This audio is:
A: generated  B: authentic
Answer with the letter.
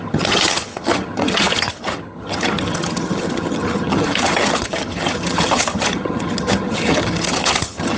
A